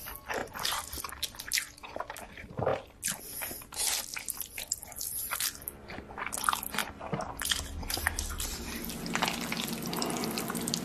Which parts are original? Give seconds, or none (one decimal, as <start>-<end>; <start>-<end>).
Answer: 0.0-10.8